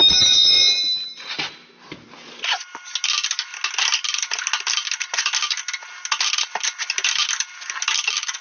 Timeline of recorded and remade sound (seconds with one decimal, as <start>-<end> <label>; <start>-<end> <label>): 0.0-8.4 recorded